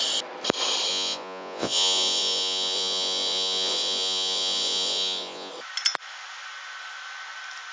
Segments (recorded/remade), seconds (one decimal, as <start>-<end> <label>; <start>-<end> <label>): 0.0-0.9 recorded; 0.9-5.5 remade; 5.5-7.7 recorded